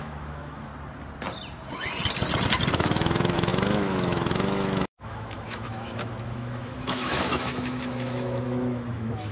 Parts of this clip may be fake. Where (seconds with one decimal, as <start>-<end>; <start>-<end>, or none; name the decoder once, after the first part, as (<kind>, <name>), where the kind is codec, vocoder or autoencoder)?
0.0-0.7 (autoencoder, DAC-VAE); 2.7-9.3